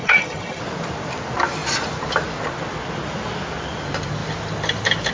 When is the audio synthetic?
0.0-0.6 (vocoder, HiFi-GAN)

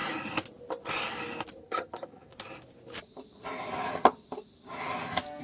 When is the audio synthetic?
1.6-2.3 (vocoder, HiFi-GAN)

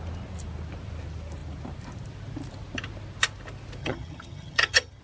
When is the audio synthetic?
3.8-5.0 (vocoder, HiFi-GAN)

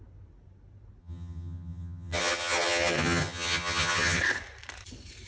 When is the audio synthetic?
1.0-4.2 (vocoder, HiFi-GAN)

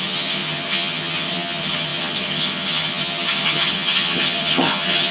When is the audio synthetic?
0.0-5.1 (vocoder, HiFi-GAN)